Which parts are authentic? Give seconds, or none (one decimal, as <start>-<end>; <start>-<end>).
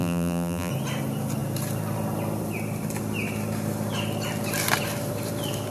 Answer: 0.7-5.7